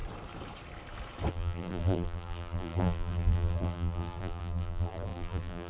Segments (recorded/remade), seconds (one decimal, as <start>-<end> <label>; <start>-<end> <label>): 0.0-1.3 recorded; 1.3-5.7 remade